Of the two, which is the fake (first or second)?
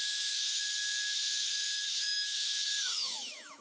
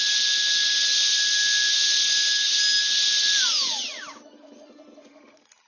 first